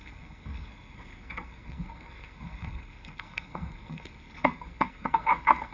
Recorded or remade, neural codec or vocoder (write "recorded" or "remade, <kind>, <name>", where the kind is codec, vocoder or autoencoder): remade, codec, SNAC